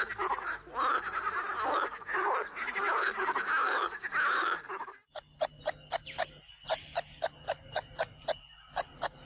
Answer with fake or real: real